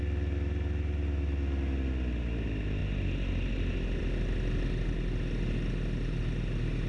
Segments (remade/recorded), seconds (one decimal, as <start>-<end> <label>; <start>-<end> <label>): 0.0-6.9 recorded